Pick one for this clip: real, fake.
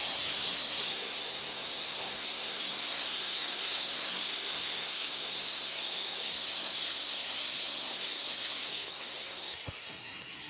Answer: fake